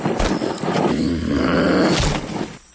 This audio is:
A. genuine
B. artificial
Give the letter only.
A